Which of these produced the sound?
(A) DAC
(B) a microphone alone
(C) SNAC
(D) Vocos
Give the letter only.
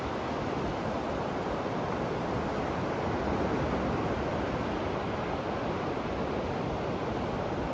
B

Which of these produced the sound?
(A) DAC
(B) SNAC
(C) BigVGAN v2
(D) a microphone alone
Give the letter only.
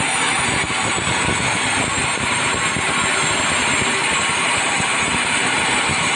D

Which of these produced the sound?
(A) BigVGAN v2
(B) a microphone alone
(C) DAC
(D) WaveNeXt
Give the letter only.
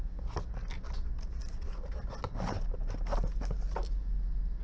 B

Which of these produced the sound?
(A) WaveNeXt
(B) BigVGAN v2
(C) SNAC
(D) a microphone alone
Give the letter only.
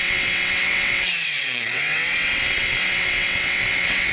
A